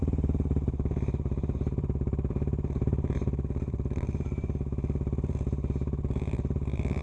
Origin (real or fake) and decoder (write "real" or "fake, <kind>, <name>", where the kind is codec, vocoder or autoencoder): fake, vocoder, BigVGAN v2